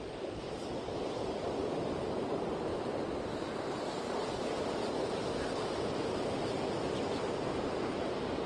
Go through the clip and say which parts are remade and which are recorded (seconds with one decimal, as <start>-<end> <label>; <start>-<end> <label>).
0.0-8.5 recorded